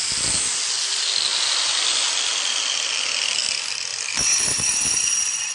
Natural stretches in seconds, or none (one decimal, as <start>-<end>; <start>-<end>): 0.0-5.5

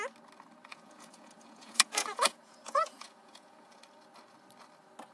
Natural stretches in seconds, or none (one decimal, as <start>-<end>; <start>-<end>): 0.0-0.7; 3.8-5.1

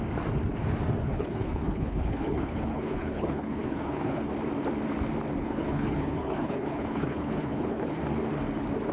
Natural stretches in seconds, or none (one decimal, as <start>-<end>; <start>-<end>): 0.0-1.0; 4.3-5.4; 8.0-8.9

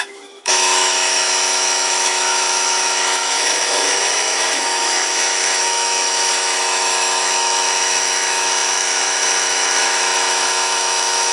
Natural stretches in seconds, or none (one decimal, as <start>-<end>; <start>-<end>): none